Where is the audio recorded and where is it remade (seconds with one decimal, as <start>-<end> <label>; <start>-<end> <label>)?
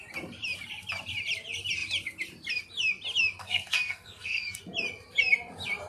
0.0-3.4 recorded; 3.4-4.6 remade; 4.6-5.9 recorded